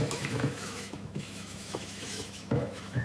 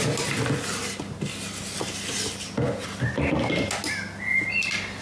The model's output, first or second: first